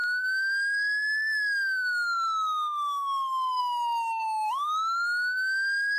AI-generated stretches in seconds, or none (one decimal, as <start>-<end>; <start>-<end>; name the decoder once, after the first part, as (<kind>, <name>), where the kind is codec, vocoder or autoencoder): 0.0-6.0 (autoencoder, DAC-VAE)